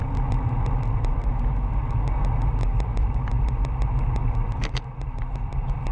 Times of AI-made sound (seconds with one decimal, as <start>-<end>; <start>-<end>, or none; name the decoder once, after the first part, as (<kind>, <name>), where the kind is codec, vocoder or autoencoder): 4.2-4.8 (vocoder, BigVGAN v2)